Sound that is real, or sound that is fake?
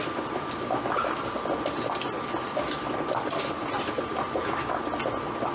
real